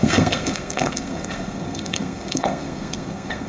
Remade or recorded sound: remade